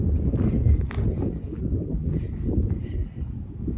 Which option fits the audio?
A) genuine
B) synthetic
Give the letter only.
A